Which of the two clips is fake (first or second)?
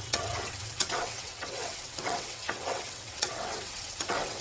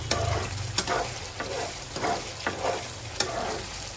first